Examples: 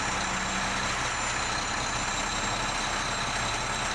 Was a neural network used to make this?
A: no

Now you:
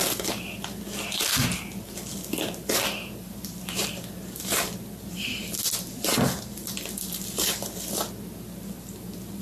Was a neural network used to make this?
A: no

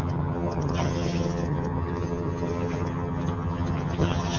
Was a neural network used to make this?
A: yes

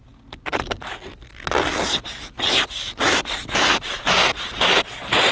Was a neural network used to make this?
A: no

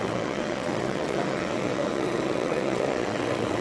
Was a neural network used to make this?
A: yes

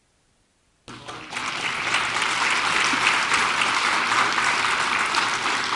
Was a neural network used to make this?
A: no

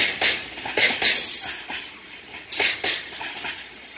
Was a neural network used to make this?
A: no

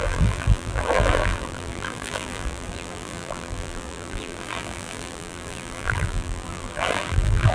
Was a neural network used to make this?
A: yes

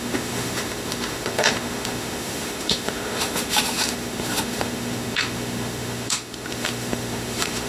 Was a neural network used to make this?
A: yes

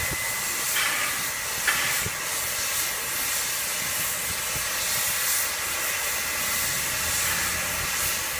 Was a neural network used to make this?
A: no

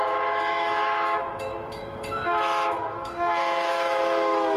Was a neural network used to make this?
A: yes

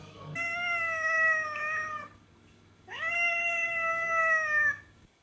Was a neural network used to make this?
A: yes